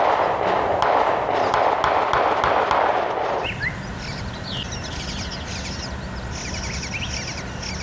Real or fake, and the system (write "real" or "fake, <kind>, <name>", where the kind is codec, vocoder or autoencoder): real